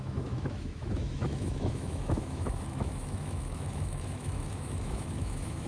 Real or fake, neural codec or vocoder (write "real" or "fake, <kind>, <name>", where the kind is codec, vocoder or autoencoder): fake, autoencoder, DAC-VAE